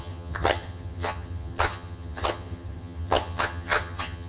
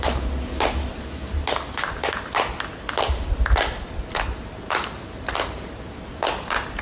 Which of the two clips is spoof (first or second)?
first